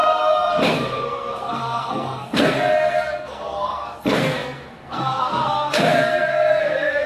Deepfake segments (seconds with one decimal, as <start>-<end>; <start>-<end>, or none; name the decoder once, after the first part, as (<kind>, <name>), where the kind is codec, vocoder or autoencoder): 0.0-7.1 (codec, SNAC)